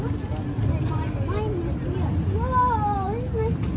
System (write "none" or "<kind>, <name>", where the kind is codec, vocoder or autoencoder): none